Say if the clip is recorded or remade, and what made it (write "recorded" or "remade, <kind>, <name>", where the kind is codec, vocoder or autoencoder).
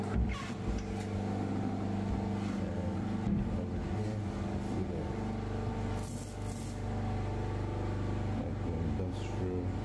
recorded